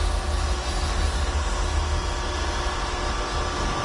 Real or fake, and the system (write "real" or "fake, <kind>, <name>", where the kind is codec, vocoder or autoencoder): real